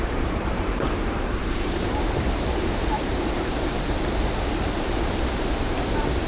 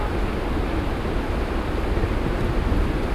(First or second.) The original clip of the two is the second